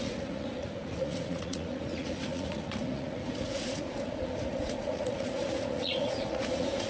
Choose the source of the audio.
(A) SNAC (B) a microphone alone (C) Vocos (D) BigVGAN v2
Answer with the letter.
C